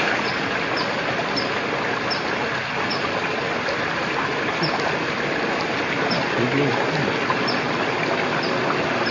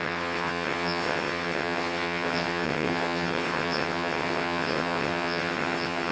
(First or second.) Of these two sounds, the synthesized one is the second